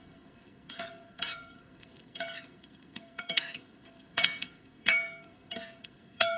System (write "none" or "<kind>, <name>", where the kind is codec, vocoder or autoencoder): codec, SNAC